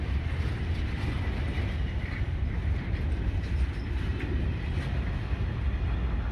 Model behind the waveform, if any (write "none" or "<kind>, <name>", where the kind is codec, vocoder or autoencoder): none